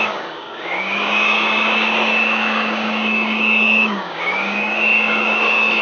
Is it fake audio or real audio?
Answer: fake